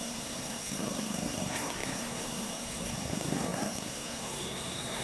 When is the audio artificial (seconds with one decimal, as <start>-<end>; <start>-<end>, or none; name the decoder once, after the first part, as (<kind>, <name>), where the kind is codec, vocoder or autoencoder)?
0.0-5.0 (codec, SNAC)